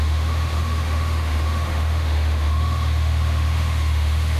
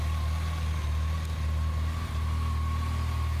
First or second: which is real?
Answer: second